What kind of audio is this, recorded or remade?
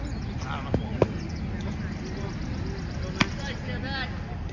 recorded